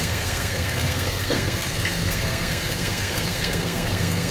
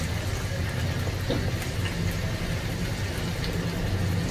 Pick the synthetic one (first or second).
first